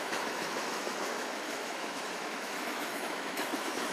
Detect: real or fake fake